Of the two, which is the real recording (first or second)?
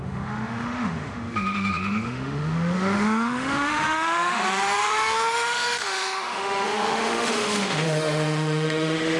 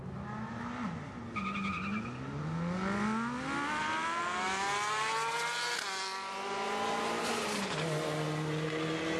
second